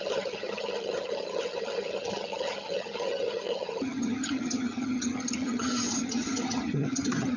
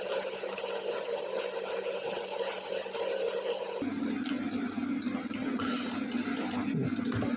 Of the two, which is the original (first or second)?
second